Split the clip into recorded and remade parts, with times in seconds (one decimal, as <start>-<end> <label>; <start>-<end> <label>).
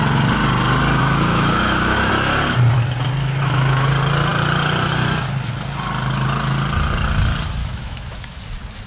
0.0-1.0 recorded; 1.0-2.1 remade; 2.1-3.2 recorded; 3.2-3.9 remade; 3.9-7.6 recorded; 7.6-8.4 remade; 8.4-8.9 recorded